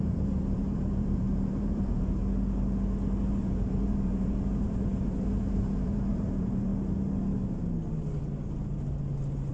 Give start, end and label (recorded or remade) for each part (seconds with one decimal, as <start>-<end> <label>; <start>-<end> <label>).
0.0-2.2 remade; 2.2-3.2 recorded; 3.2-6.7 remade; 6.7-9.5 recorded

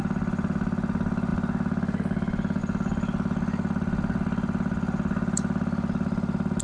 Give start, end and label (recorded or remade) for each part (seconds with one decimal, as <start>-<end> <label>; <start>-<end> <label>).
0.0-6.6 recorded